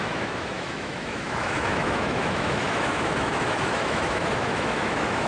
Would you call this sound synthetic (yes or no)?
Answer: yes